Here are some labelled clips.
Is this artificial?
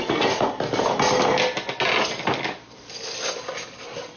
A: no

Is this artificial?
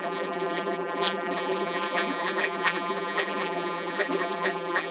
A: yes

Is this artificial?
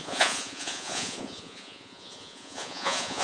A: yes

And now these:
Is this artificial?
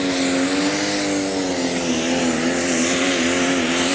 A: no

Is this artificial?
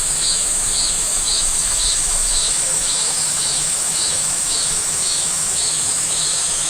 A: yes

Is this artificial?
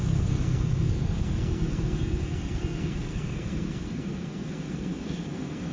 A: yes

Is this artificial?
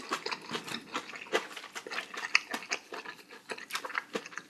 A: no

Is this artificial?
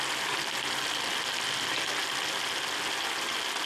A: no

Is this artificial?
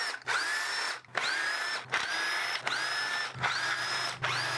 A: no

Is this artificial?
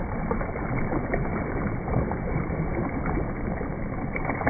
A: no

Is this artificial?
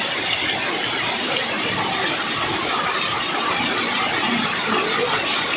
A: no